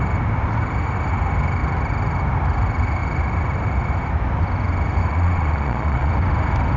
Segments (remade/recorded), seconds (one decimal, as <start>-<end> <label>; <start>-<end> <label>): 0.0-5.1 recorded; 5.1-6.1 remade; 6.1-6.8 recorded